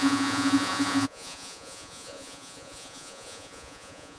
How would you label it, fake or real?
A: fake